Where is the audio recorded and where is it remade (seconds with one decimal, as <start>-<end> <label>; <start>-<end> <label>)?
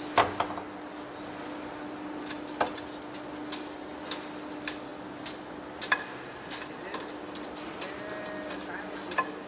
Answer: 0.0-9.5 recorded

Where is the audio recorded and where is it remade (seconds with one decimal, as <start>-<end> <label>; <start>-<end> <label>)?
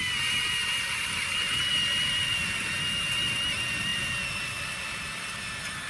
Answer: 0.0-0.6 recorded; 0.6-2.7 remade; 2.7-3.9 recorded; 3.9-5.4 remade; 5.4-5.9 recorded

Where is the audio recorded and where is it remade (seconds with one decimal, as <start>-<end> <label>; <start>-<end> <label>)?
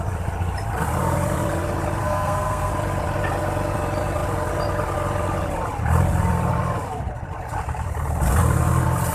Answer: 0.0-2.0 recorded; 2.0-2.7 remade; 2.7-9.1 recorded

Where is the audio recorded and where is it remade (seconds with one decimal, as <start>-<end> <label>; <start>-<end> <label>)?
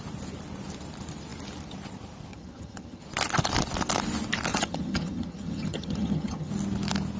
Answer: 0.0-2.3 recorded; 2.3-3.0 remade; 3.0-4.5 recorded; 4.5-6.5 remade; 6.5-7.2 recorded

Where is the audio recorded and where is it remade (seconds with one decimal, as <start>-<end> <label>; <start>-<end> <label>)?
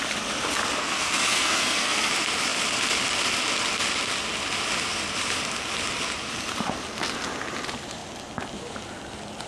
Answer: 0.0-0.8 recorded; 0.8-2.1 remade; 2.1-9.5 recorded